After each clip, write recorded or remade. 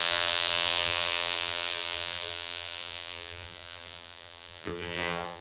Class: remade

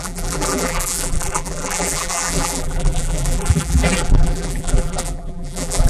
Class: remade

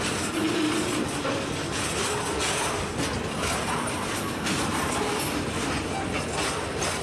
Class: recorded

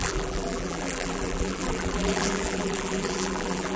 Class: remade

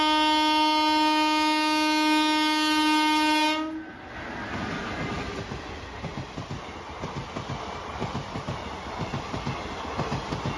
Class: recorded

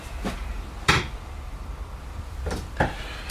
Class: remade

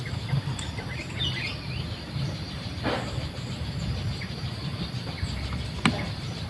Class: remade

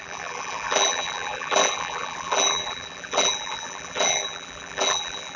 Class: remade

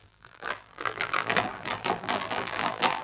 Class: remade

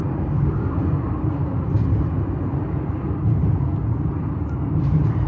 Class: remade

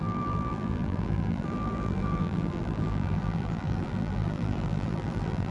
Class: remade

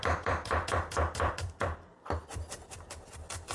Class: remade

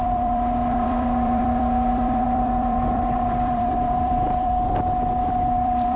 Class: remade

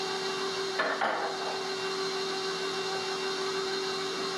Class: recorded